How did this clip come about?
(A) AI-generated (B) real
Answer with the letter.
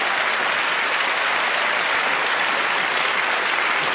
B